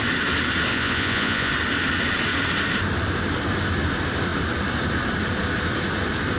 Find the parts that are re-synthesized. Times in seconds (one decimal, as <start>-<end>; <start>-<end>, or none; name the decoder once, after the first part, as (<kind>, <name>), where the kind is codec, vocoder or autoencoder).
0.7-1.5 (vocoder, Vocos)